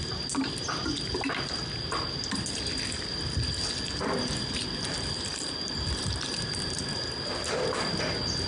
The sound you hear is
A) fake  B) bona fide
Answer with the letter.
B